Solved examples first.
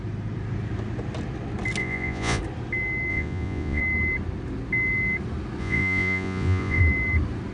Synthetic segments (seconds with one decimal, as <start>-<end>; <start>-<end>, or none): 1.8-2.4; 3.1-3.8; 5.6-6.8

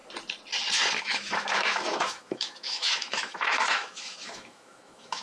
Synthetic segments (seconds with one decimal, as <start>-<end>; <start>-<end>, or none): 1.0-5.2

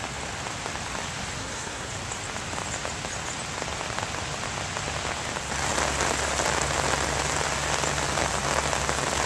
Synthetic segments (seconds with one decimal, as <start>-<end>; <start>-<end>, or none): 1.4-1.9

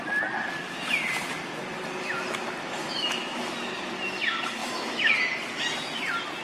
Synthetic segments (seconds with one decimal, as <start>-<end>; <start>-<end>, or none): 2.8-3.4; 4.6-5.1